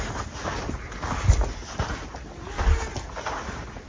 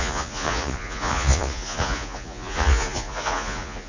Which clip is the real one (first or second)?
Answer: first